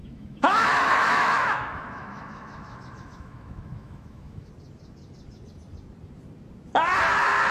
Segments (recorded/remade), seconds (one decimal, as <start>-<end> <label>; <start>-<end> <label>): 0.0-4.5 remade; 4.5-7.5 recorded